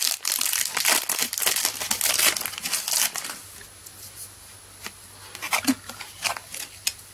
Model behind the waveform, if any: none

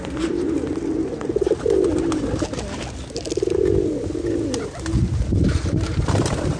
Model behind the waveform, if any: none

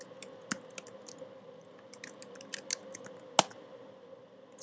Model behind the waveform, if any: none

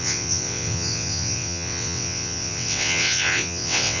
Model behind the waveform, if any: vocoder, WaveNeXt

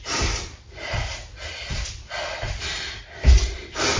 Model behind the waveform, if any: none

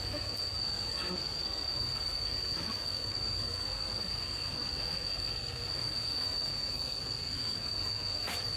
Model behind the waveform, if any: codec, SNAC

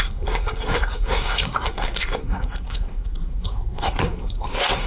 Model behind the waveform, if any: codec, SNAC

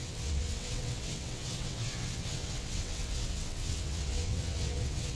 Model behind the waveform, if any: vocoder, WaveNeXt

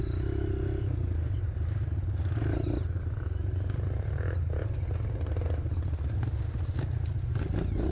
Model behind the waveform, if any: none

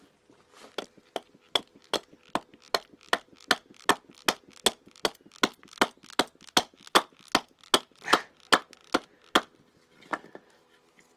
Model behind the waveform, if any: none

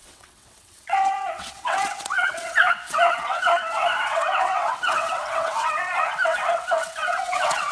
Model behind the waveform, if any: vocoder, WaveNeXt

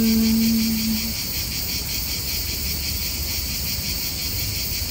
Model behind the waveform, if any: none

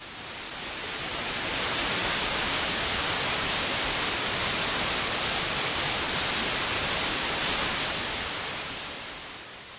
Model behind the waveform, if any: none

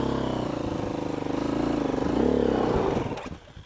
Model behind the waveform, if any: none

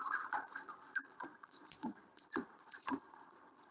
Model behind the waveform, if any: vocoder, Vocos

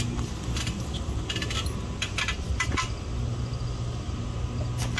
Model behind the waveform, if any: none